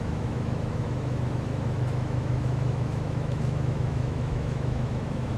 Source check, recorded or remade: remade